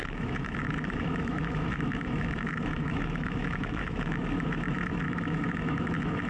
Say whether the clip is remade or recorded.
remade